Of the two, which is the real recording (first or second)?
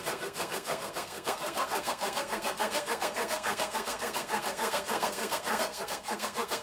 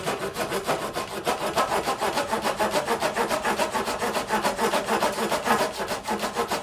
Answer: second